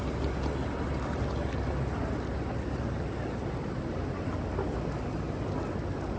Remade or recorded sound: recorded